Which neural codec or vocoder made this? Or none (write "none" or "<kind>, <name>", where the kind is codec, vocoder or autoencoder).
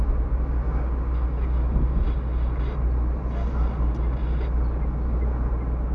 none